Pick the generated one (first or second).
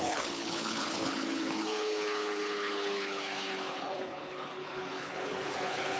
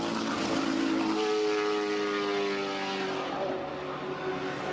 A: first